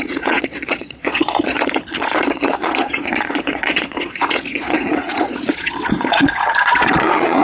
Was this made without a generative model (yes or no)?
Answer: no